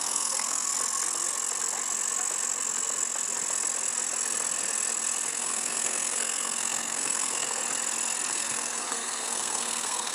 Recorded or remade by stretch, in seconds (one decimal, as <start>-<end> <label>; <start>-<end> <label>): 0.0-0.7 remade; 0.7-5.3 recorded; 5.3-7.6 remade; 7.6-8.3 recorded; 8.3-10.1 remade